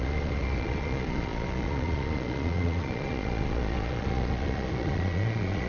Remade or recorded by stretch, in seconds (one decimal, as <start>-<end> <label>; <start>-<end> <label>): 0.0-5.7 remade